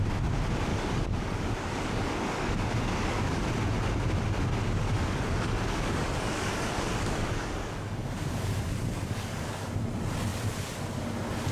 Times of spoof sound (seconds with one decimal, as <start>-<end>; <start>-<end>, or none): 0.7-3.4; 4.6-9.6